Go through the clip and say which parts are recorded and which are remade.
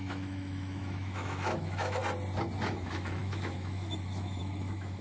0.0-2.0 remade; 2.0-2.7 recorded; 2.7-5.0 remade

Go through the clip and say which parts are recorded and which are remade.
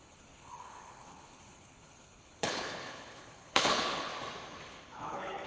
0.0-4.1 remade; 4.1-4.7 recorded; 4.7-5.5 remade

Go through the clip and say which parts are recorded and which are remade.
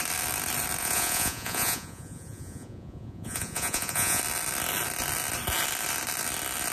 0.0-0.8 recorded; 0.8-4.2 remade; 4.2-6.7 recorded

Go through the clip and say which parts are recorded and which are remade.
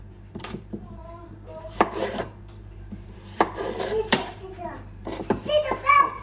0.0-6.2 remade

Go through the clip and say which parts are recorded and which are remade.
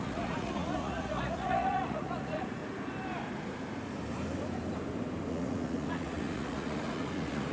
0.0-2.6 remade; 2.6-5.3 recorded; 5.3-7.5 remade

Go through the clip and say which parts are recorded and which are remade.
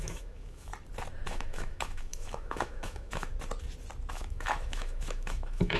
0.0-0.7 remade; 0.7-1.3 recorded; 1.3-3.3 remade; 3.3-4.1 recorded; 4.1-5.8 remade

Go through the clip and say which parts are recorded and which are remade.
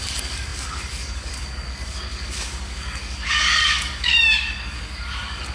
0.0-5.5 remade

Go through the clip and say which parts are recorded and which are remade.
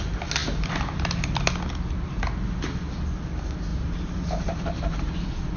0.0-3.7 recorded; 3.7-5.1 remade; 5.1-5.6 recorded